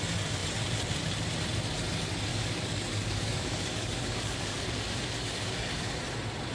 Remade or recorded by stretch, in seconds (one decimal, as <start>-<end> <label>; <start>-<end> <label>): 0.0-2.3 recorded; 2.3-6.0 remade; 6.0-6.5 recorded